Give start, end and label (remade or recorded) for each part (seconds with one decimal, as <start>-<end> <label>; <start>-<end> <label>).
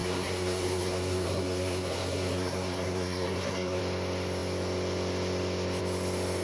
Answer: 0.0-3.8 remade; 3.8-6.4 recorded